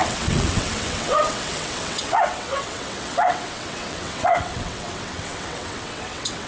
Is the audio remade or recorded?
remade